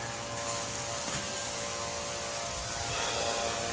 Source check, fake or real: real